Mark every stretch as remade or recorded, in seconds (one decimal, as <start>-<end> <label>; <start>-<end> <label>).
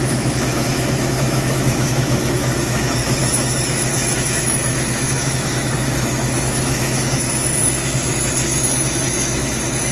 0.0-9.9 remade